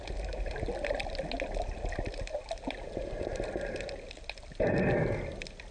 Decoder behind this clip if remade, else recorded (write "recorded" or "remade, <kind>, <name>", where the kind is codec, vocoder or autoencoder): recorded